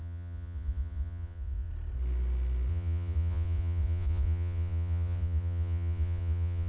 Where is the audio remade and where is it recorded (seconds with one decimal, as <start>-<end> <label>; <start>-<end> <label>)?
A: 0.0-1.7 remade; 1.7-2.7 recorded; 2.7-6.7 remade